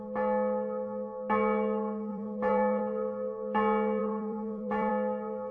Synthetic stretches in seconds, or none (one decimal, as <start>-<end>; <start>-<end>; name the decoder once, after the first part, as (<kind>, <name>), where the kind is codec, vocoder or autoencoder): 2.1-2.8 (vocoder, BigVGAN v2); 4.0-4.9